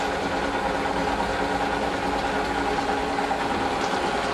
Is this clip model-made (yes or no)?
no